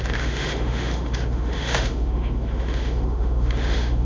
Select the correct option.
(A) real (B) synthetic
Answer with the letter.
B